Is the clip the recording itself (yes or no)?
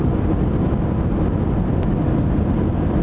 yes